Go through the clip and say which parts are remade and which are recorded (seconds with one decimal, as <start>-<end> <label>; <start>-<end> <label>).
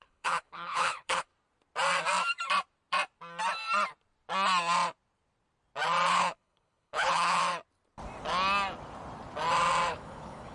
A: 0.0-1.3 remade; 1.3-6.1 recorded; 6.1-7.4 remade; 7.4-9.9 recorded; 9.9-10.5 remade